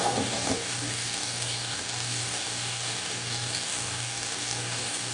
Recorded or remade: remade